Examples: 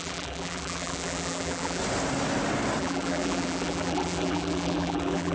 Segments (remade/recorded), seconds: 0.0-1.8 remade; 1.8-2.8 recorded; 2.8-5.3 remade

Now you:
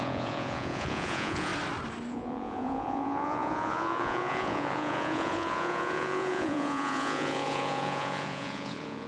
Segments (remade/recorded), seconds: 0.0-1.5 remade; 1.5-2.1 recorded; 2.1-9.1 remade

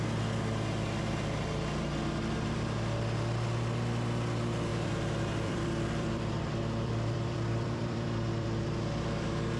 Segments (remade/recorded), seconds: 0.0-4.7 recorded; 4.7-8.8 remade; 8.8-9.6 recorded

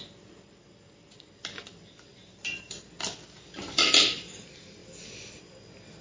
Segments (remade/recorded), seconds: 0.0-6.0 recorded

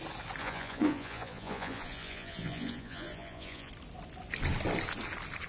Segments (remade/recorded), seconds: 0.0-0.4 recorded; 0.4-3.7 remade; 3.7-5.5 recorded

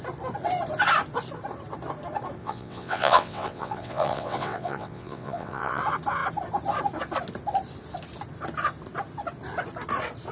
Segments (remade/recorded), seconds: 0.0-2.4 recorded; 2.4-5.8 remade; 5.8-10.3 recorded

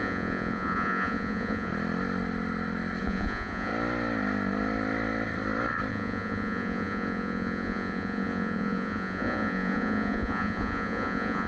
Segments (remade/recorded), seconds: 0.0-1.7 remade; 1.7-3.0 recorded; 3.0-3.7 remade; 3.7-5.9 recorded; 5.9-11.5 remade